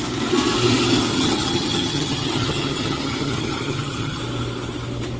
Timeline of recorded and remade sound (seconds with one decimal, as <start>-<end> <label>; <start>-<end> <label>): 0.0-1.1 recorded; 1.1-4.2 remade; 4.2-5.2 recorded